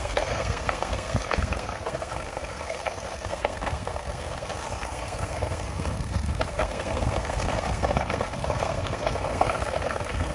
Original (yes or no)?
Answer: no